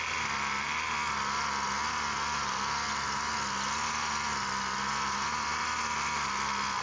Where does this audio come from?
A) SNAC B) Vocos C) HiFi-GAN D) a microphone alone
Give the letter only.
D